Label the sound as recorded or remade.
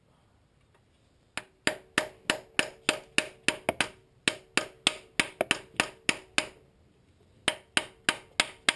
recorded